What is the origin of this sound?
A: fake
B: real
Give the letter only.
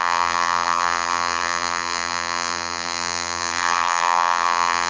A